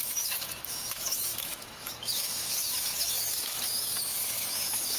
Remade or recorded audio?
remade